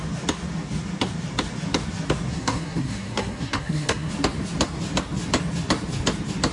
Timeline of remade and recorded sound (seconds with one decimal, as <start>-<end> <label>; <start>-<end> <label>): 0.0-2.3 recorded; 2.3-4.1 remade; 4.1-6.5 recorded